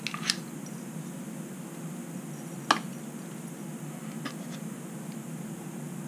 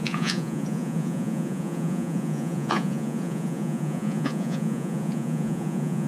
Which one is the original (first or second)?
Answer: first